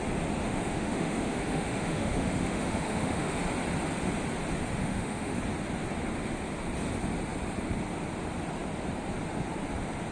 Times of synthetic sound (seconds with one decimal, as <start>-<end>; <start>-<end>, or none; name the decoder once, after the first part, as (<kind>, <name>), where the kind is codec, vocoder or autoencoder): 0.4-3.4 (autoencoder, DAC-VAE); 4.8-5.4